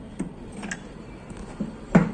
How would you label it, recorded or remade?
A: recorded